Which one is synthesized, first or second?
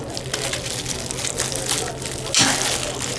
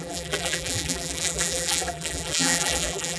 second